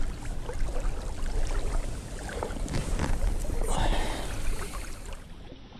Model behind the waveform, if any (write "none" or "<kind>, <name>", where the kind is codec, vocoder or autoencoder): none